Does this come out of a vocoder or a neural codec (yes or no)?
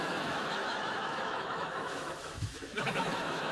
yes